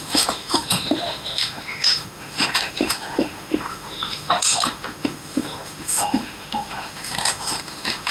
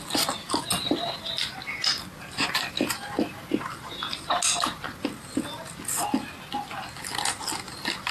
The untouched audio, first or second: second